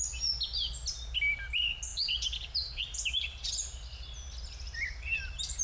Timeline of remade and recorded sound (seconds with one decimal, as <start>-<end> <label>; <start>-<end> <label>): 0.0-1.9 recorded; 1.9-3.5 remade; 3.5-5.6 recorded